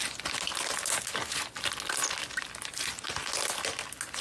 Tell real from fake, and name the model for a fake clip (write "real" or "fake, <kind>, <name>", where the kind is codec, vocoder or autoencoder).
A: real